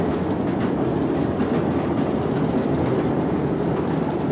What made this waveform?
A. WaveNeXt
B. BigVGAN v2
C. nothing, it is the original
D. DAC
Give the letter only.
B